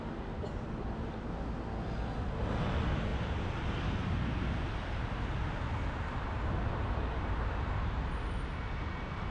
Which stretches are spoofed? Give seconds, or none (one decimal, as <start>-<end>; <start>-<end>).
none